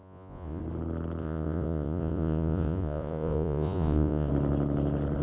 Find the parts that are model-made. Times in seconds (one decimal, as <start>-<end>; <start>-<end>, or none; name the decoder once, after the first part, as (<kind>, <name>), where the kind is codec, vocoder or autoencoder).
0.0-0.6 (vocoder, Vocos); 1.2-4.3